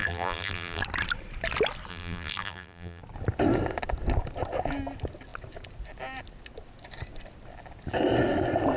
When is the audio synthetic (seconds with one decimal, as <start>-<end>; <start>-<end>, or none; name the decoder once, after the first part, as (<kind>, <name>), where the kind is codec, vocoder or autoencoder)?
0.0-0.8 (vocoder, BigVGAN v2); 1.9-3.0